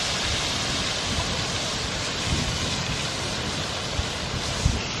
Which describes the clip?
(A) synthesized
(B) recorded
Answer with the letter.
B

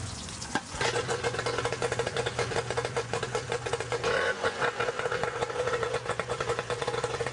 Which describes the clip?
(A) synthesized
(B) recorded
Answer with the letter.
A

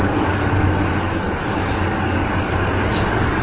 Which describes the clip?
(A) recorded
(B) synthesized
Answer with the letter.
B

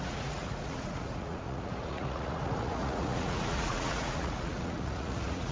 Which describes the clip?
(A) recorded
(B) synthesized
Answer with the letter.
B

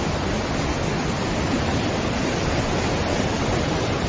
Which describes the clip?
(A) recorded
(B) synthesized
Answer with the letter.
A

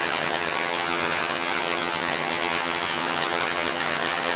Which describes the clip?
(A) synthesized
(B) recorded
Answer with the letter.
A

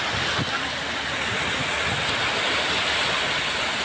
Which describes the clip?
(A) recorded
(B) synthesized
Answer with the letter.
A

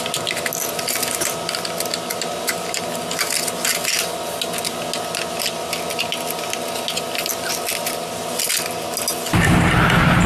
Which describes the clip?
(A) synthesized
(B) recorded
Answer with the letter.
B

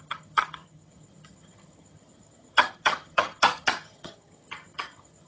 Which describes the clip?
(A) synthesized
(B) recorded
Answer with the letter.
A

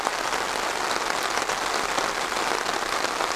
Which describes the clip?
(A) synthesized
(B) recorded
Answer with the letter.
B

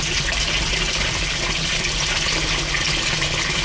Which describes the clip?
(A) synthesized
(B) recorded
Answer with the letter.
B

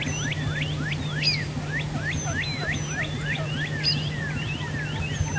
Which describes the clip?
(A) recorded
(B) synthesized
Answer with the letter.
A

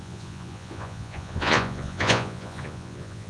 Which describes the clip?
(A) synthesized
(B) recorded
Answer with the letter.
A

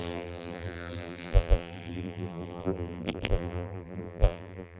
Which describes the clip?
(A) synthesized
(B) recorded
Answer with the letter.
A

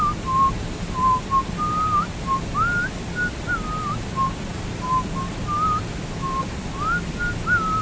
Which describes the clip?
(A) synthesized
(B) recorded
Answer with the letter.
B